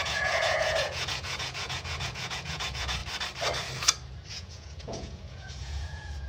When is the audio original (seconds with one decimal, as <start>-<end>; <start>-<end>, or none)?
3.0-4.3